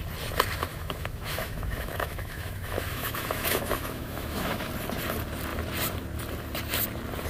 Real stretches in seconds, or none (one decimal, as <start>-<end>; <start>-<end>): 0.0-0.7; 4.7-7.3